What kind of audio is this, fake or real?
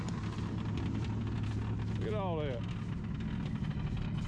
real